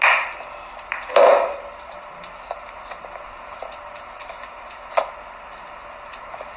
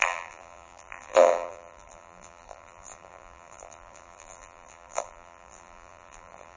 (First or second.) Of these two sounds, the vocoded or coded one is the second